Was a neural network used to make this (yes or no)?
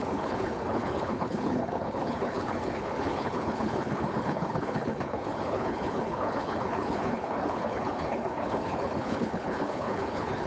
yes